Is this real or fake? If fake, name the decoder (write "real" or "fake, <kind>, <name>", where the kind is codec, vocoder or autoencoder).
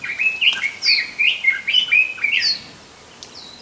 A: real